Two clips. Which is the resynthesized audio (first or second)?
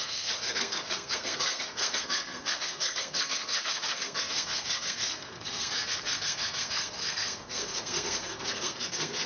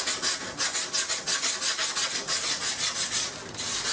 first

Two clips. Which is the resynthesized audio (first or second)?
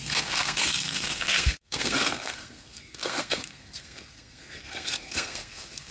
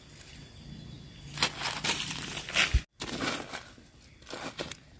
first